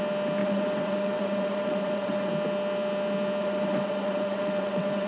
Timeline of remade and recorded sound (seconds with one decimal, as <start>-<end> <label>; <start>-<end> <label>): 0.0-0.4 recorded; 0.4-2.3 remade; 2.3-3.4 recorded; 3.4-5.1 remade